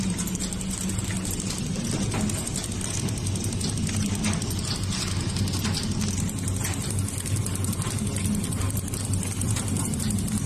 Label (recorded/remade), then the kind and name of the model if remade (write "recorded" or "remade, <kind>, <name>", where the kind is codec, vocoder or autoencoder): recorded